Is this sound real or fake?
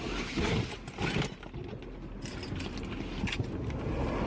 real